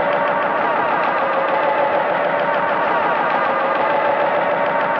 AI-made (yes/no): no